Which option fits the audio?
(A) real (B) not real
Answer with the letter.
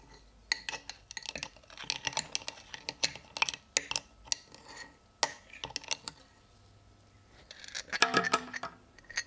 A